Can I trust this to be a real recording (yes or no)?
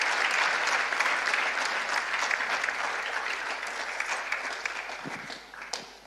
yes